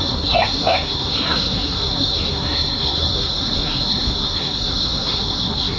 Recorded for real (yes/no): no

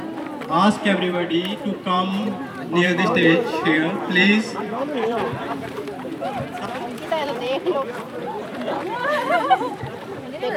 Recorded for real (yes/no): no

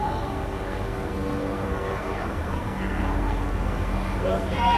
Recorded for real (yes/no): no